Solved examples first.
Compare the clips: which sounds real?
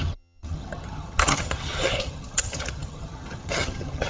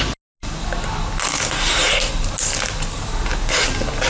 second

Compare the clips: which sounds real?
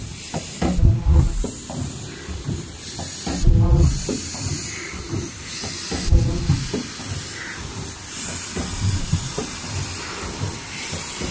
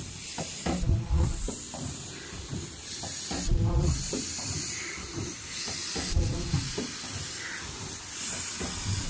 first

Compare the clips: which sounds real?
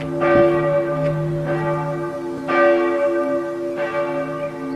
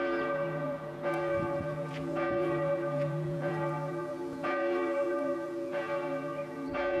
first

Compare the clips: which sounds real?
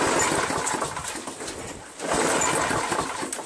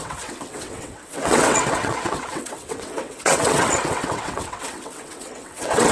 first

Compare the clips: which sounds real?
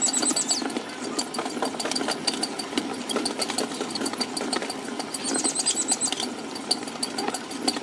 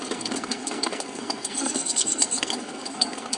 first